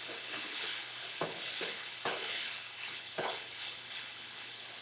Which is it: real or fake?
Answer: fake